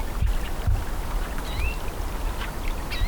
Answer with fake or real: real